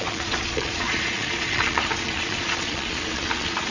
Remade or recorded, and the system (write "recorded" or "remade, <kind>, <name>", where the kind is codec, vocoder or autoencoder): remade, vocoder, Vocos